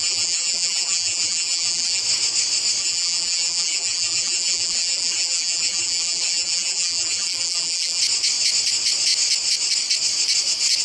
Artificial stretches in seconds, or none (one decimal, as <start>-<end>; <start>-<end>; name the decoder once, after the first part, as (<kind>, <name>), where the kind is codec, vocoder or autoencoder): 0.0-2.0 (vocoder, BigVGAN v2); 2.8-8.0